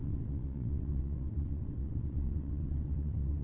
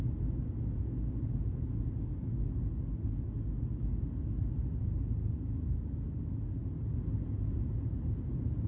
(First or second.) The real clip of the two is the second